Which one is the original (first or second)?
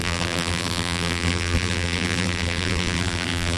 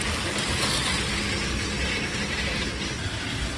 second